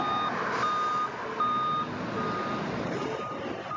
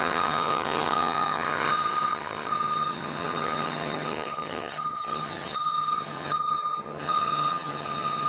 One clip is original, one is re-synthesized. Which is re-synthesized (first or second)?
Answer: second